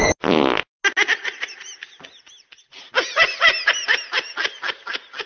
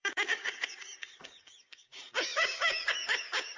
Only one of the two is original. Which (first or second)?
first